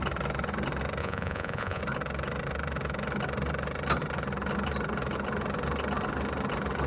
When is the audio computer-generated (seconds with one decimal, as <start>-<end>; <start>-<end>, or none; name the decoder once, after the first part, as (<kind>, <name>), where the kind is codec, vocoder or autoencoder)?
1.0-1.8 (vocoder, Vocos)